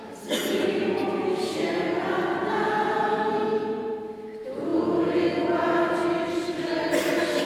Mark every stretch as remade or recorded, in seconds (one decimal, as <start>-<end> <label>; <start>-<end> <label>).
0.0-2.4 recorded; 2.4-3.9 remade; 3.9-4.7 recorded; 4.7-5.4 remade; 5.4-7.5 recorded